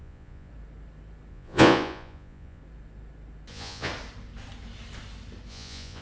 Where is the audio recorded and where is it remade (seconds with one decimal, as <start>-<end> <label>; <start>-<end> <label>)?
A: 0.0-0.5 remade; 0.5-1.3 recorded; 1.3-2.6 remade; 2.6-3.5 recorded; 3.5-3.9 remade; 3.9-5.5 recorded; 5.5-6.0 remade